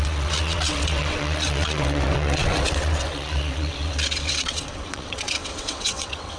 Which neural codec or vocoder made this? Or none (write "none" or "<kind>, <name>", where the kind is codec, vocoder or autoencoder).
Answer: vocoder, WaveNeXt